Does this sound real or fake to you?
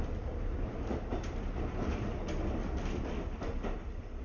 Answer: real